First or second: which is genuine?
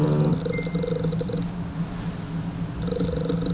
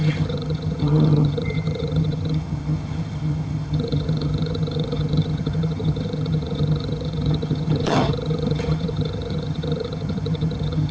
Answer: first